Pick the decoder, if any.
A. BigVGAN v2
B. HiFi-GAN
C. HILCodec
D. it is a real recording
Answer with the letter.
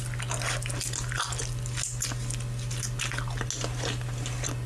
D